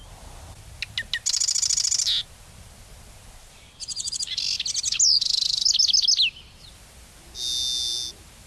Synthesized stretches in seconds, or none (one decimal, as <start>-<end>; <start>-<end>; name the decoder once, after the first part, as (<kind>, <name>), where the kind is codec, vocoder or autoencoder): 0.0-0.6 (vocoder, BigVGAN v2); 3.4-4.2